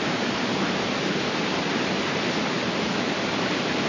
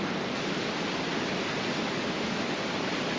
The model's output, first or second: first